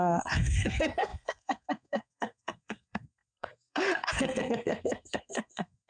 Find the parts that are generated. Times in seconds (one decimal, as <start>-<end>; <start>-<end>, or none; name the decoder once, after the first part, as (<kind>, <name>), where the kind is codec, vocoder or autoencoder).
0.0-5.9 (codec, SNAC)